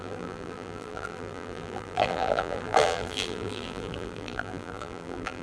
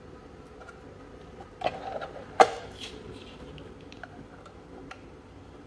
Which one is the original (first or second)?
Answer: second